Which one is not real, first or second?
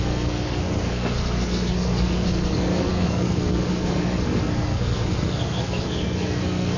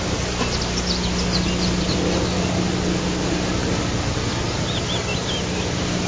first